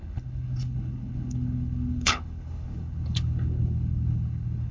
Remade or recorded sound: remade